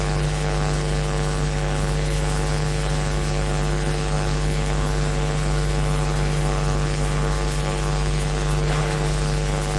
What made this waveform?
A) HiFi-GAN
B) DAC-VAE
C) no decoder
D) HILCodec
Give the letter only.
D